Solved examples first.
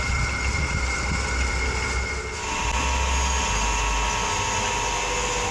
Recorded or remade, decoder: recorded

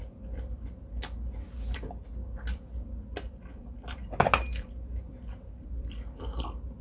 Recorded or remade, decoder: recorded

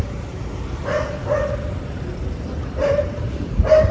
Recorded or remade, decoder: recorded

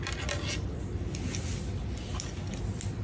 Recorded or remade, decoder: recorded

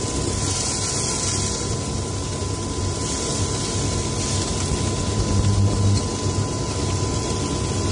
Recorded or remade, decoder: recorded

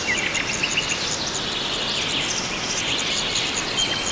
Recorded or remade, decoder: recorded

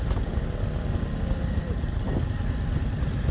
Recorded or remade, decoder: recorded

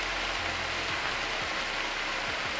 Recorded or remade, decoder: recorded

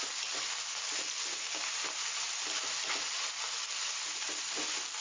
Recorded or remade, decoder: recorded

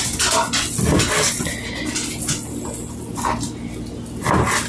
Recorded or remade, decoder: recorded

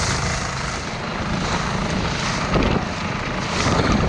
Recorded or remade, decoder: remade, vocoder, BigVGAN v2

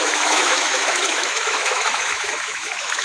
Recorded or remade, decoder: remade, autoencoder, DAC-VAE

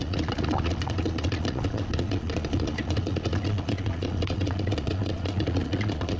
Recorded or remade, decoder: remade, vocoder, Vocos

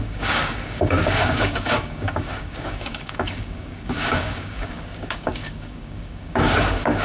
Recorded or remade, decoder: remade, codec, DAC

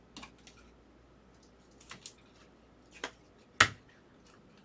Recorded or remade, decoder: recorded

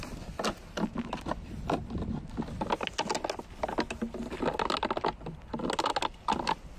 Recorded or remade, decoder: recorded